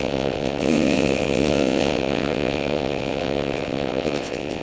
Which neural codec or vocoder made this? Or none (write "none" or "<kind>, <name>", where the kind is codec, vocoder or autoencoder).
vocoder, WaveNeXt